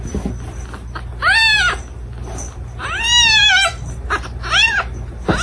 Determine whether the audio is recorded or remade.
recorded